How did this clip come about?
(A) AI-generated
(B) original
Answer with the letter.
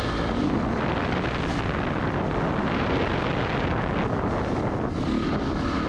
B